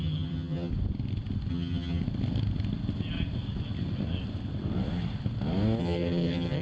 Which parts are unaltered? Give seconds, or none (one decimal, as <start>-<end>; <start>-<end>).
0.7-1.5; 2.0-5.8